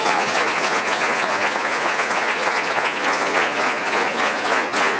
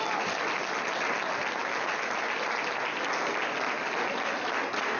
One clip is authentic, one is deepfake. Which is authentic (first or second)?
second